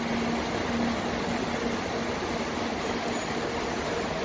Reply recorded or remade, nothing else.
recorded